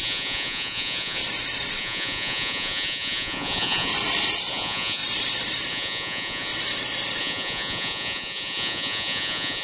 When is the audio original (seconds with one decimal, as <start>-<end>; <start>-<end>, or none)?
1.2-1.8; 3.9-4.5; 5.0-5.7; 6.5-7.2